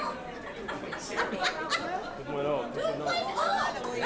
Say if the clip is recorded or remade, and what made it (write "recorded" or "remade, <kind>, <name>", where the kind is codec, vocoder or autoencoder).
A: recorded